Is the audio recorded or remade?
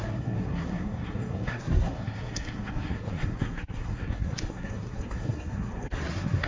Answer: remade